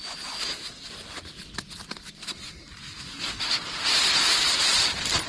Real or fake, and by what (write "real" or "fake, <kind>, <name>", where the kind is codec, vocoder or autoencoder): real